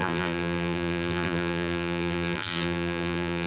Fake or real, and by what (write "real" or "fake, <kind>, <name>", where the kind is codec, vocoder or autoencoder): fake, vocoder, BigVGAN v2